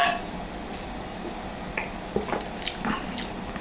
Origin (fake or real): real